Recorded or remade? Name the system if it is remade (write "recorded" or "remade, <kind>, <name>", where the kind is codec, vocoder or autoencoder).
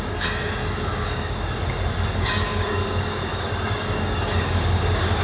remade, codec, DAC